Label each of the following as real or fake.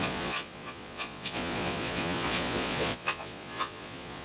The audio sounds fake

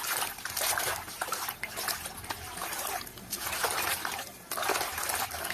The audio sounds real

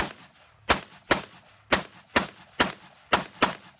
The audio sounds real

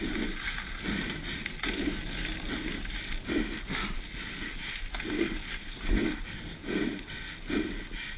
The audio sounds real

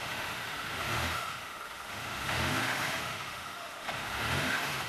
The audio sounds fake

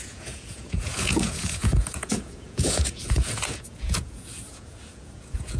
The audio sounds fake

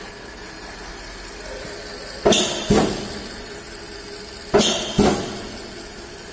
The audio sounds real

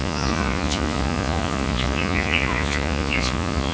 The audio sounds fake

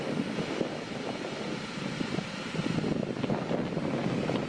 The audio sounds real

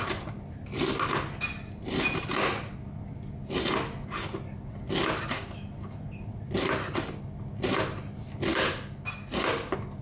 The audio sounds real